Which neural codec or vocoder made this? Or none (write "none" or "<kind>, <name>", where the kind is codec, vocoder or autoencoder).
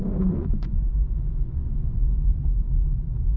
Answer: vocoder, Vocos